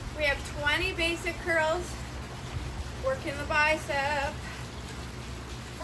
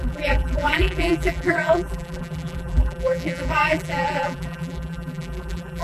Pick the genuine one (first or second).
first